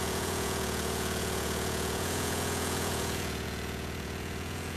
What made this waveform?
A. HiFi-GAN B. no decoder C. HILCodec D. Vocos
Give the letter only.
D